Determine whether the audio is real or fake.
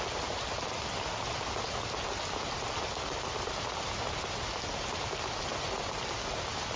real